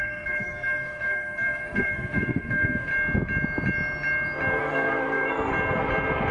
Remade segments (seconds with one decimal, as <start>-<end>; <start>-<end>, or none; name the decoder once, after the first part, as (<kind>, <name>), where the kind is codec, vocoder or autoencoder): 0.0-2.9 (codec, SNAC); 4.6-5.5